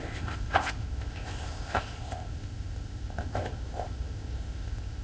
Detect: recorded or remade remade